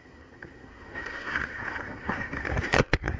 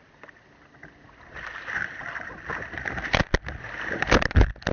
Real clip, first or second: second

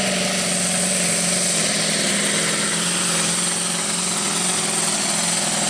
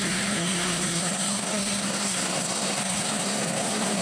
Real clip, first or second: first